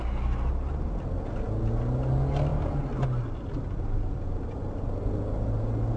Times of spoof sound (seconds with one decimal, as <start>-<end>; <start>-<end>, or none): none